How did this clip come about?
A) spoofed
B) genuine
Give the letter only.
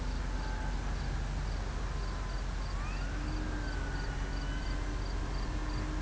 B